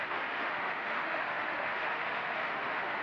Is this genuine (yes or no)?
no